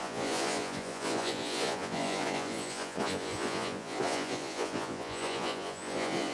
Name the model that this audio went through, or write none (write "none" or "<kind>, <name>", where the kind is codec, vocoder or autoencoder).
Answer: vocoder, Vocos